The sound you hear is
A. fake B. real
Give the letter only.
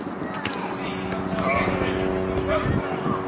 B